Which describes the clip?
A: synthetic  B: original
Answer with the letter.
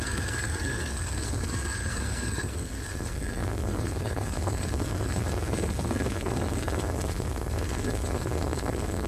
A